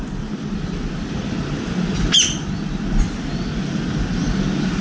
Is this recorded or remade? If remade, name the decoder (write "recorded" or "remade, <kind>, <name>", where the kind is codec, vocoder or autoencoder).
recorded